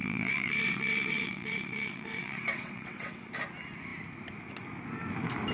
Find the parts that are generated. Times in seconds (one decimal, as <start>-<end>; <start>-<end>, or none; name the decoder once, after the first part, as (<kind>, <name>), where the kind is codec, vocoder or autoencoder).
0.0-3.3 (vocoder, WaveNeXt)